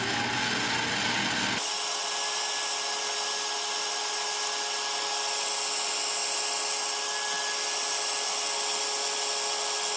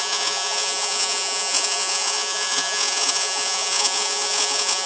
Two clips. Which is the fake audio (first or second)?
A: second